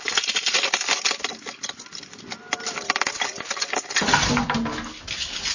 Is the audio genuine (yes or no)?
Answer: yes